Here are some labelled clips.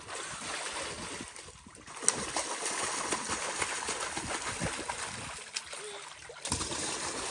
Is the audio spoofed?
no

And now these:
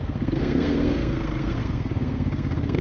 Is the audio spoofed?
yes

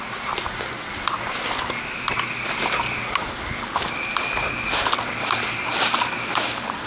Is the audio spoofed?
no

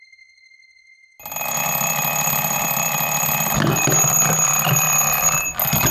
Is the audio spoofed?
no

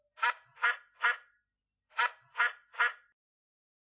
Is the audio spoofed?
no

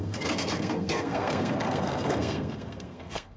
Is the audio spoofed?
yes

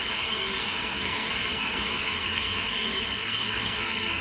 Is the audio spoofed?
yes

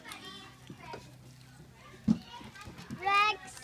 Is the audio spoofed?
no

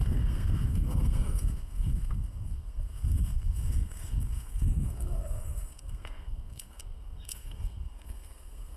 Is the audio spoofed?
yes